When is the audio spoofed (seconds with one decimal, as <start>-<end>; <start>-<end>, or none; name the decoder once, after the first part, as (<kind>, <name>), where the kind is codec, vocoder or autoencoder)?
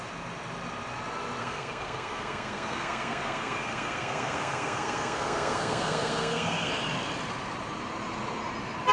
1.4-6.7 (codec, SNAC)